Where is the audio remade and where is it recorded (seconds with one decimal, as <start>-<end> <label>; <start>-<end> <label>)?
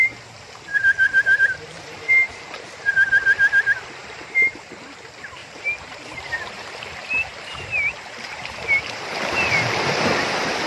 0.0-0.7 recorded; 0.7-2.9 remade; 2.9-4.0 recorded; 4.0-4.6 remade; 4.6-5.4 recorded; 5.4-10.1 remade; 10.1-10.7 recorded